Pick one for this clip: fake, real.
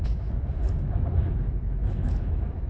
fake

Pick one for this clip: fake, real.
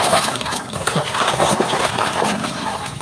fake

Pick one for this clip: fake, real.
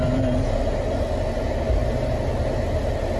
real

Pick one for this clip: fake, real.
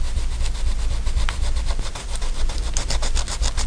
real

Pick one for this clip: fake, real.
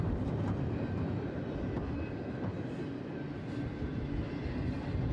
real